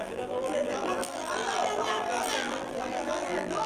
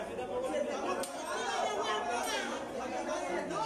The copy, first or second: first